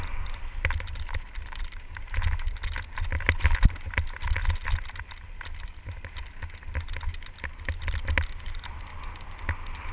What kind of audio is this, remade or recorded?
recorded